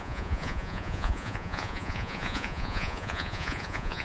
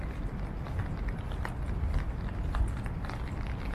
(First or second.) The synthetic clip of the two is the first